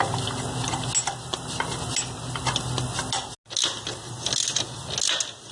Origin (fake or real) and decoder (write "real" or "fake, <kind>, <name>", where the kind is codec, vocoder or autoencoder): real